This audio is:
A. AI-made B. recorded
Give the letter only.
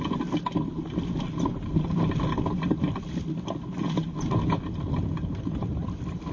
B